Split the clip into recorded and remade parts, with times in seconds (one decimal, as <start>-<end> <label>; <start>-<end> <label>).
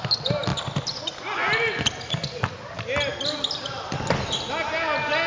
0.0-5.3 recorded